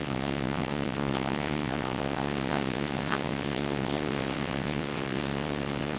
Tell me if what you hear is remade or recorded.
remade